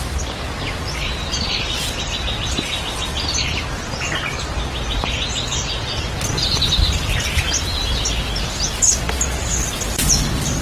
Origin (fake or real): real